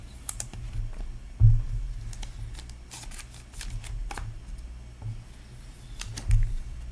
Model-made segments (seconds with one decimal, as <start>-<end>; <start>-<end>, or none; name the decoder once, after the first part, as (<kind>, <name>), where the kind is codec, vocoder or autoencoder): 0.0-0.8 (vocoder, BigVGAN v2)